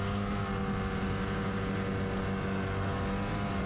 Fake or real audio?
real